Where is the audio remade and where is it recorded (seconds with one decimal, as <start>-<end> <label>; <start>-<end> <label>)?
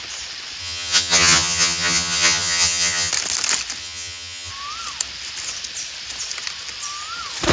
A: 0.0-0.6 recorded; 0.6-3.1 remade; 3.1-3.8 recorded; 3.8-4.5 remade; 4.5-7.5 recorded